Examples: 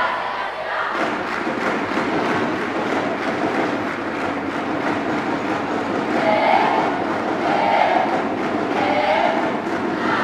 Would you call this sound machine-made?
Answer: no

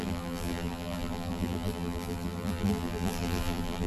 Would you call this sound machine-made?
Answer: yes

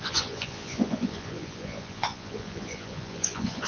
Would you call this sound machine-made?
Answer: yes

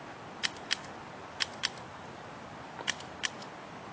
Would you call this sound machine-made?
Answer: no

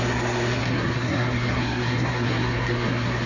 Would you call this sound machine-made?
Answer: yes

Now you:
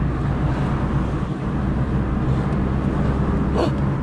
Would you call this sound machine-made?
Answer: no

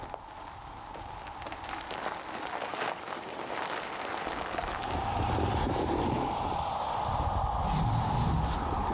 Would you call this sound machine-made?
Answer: no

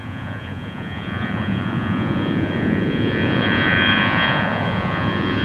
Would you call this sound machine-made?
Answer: yes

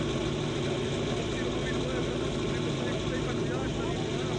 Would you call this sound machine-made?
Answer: no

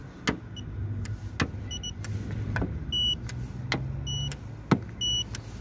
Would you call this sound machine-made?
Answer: no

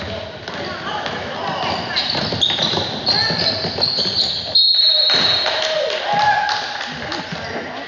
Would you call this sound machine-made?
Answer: no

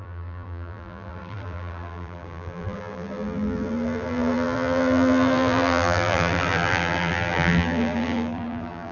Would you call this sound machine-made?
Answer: yes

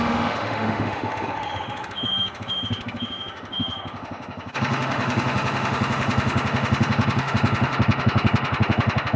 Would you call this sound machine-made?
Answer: yes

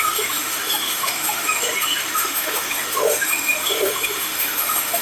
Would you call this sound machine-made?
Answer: yes